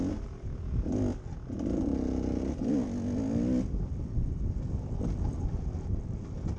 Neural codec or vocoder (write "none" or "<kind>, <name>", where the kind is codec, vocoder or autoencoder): none